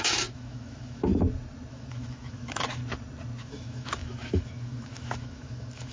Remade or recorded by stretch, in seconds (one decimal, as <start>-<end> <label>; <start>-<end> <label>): 0.0-1.1 remade; 1.1-1.7 recorded; 1.7-2.8 remade; 2.8-3.4 recorded; 3.4-5.9 remade